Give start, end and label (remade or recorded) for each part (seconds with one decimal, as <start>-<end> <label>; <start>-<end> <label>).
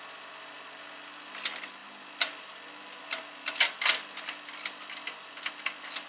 0.0-6.1 recorded